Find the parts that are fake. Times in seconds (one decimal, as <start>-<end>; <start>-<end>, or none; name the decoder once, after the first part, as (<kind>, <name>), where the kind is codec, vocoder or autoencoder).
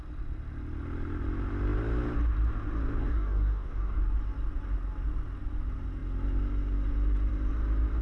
3.0-4.0 (codec, DAC)